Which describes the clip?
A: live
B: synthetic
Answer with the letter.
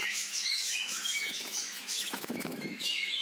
B